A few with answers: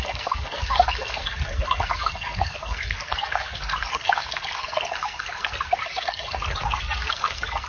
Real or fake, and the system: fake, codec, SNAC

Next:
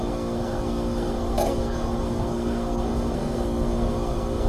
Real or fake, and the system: fake, codec, SNAC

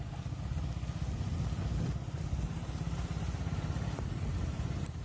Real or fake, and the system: real